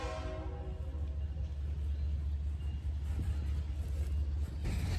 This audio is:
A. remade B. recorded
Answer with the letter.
B